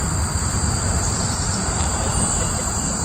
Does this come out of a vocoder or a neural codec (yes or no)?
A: yes